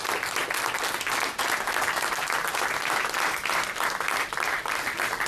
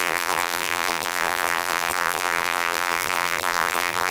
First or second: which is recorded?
first